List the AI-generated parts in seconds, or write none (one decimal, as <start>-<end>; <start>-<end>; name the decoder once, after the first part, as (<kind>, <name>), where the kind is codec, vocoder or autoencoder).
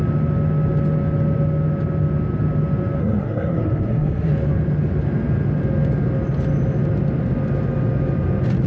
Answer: 3.0-4.3 (codec, SNAC)